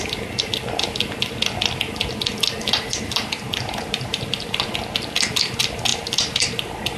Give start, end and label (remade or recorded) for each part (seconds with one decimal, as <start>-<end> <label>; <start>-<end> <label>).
0.0-2.6 recorded; 2.6-4.7 remade; 4.7-5.9 recorded; 5.9-7.0 remade